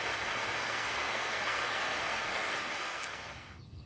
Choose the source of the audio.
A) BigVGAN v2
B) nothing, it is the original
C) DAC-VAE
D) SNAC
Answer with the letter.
D